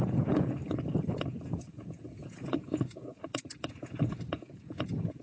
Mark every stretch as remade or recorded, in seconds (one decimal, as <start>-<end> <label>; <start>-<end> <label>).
0.0-0.6 remade; 0.6-1.7 recorded; 1.7-5.2 remade